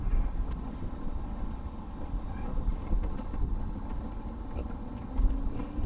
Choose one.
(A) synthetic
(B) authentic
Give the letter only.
B